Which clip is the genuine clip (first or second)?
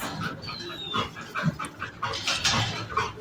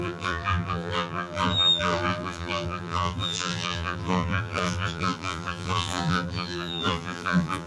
first